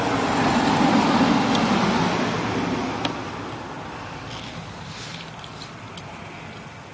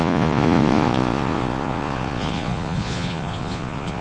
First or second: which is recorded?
first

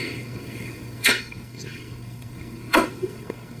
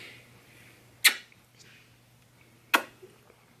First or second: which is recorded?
second